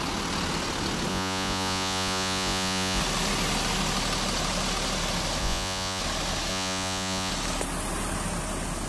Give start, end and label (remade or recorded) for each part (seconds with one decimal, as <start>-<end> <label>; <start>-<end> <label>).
0.0-1.1 recorded; 1.1-3.0 remade; 3.0-5.4 recorded; 5.4-6.0 remade; 6.0-6.5 recorded; 6.5-7.3 remade; 7.3-8.9 recorded